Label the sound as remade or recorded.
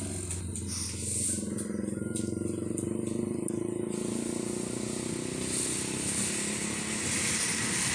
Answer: recorded